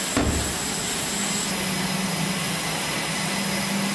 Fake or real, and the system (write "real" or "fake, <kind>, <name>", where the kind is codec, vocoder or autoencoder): real